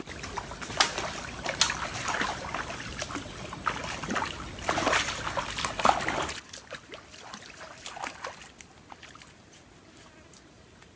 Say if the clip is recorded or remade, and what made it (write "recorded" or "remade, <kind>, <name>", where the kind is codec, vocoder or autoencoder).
recorded